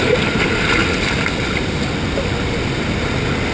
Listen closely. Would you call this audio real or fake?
real